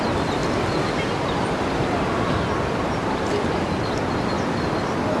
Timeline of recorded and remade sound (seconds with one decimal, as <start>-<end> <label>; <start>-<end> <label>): 0.0-5.2 recorded